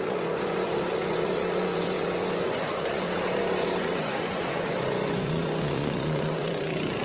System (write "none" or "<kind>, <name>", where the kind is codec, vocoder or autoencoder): vocoder, Vocos